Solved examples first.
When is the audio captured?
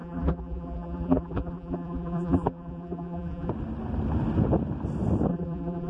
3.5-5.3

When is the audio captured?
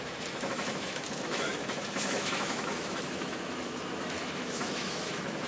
none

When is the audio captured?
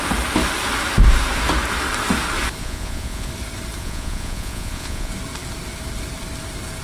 0.0-2.6; 3.3-3.8; 5.1-6.8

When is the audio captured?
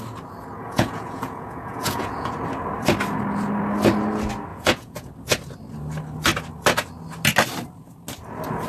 0.0-0.6; 2.3-4.5; 5.1-8.7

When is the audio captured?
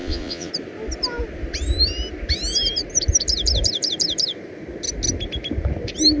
0.5-6.2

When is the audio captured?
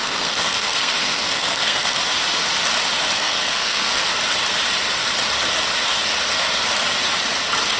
2.0-3.2; 3.9-7.8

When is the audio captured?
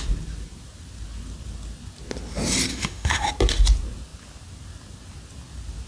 0.0-2.7; 3.3-5.9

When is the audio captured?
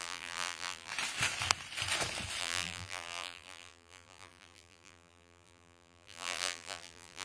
0.9-2.4